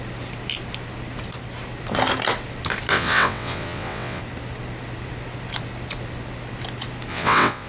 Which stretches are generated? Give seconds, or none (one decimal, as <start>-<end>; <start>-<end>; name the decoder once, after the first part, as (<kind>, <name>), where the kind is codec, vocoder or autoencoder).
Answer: 2.9-4.2 (vocoder, WaveNeXt); 7.1-7.7